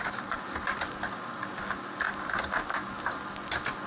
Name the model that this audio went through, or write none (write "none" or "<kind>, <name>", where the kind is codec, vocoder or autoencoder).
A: none